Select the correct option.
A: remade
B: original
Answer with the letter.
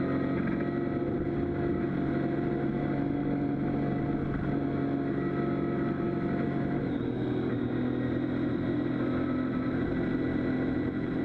B